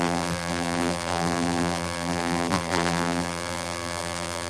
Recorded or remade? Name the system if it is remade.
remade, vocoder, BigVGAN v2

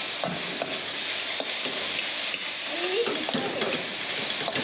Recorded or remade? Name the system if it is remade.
recorded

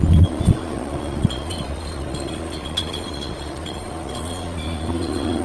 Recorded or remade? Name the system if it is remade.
remade, vocoder, Vocos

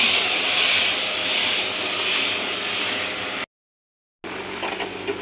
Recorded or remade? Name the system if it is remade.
recorded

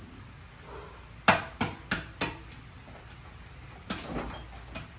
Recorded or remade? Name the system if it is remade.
recorded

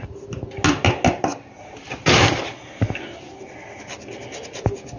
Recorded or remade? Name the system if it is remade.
recorded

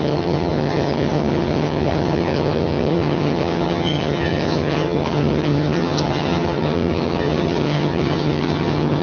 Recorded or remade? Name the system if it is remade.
remade, vocoder, HiFi-GAN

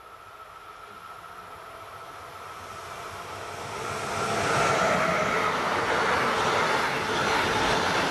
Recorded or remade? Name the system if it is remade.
recorded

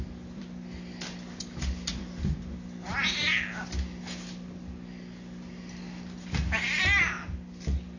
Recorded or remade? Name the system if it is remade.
recorded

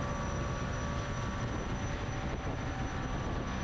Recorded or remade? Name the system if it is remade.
recorded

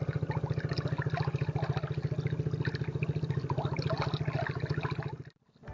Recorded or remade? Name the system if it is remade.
recorded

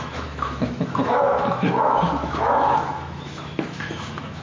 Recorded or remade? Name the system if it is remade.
remade, autoencoder, DAC-VAE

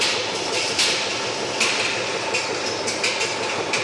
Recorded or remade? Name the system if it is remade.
recorded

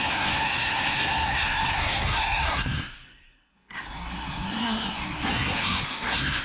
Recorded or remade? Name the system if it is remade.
remade, codec, SNAC